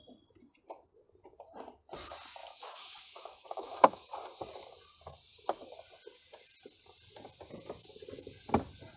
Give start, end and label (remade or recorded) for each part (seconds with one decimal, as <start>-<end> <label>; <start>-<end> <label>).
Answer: 0.0-2.4 recorded; 2.4-4.1 remade; 4.1-9.0 recorded